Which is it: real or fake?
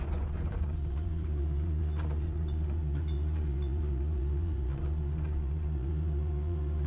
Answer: fake